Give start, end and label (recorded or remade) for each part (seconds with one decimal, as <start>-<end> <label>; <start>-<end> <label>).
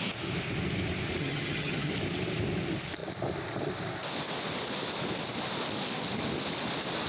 0.0-1.2 recorded; 1.2-1.9 remade; 1.9-7.1 recorded